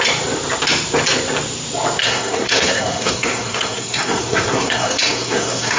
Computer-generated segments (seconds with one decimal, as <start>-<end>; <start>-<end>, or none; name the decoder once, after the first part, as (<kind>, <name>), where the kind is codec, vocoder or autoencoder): 2.0-5.8 (codec, SNAC)